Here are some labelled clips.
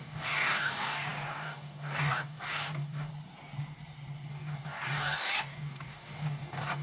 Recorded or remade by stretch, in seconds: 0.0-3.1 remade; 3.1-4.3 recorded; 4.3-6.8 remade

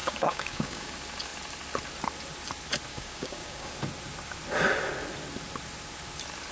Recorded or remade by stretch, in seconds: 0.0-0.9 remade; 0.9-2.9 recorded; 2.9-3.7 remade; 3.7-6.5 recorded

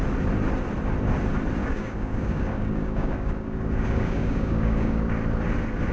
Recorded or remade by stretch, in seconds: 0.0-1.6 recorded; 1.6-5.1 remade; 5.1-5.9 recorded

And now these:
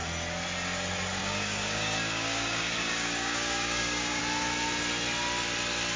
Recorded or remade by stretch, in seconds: 0.0-1.2 recorded; 1.2-4.2 remade; 4.2-6.0 recorded

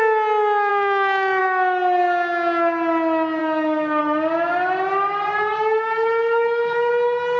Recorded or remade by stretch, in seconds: 0.0-0.7 recorded; 0.7-1.4 remade; 1.4-3.4 recorded; 3.4-4.0 remade; 4.0-5.4 recorded; 5.4-6.9 remade; 6.9-7.4 recorded